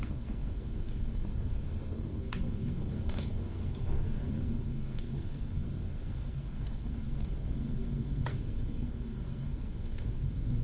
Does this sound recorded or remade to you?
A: remade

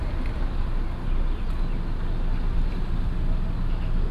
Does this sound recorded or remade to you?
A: recorded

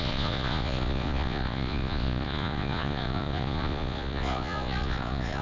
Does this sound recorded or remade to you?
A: remade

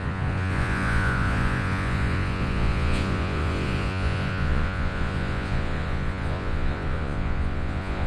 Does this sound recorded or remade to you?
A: remade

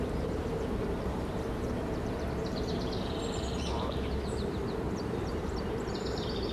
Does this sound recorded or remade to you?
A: remade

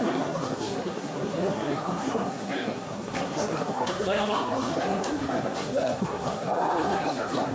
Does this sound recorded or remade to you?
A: remade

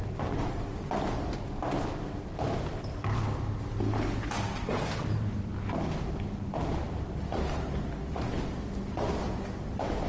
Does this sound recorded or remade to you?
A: recorded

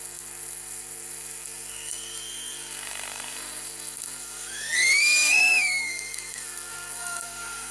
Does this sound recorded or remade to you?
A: remade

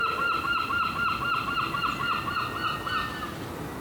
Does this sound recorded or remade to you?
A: recorded